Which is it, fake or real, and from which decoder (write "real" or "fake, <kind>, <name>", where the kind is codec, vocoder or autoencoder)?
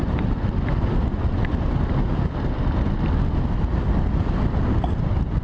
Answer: real